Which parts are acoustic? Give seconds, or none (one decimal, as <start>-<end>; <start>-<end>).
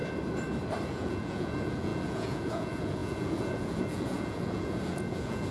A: 0.0-0.9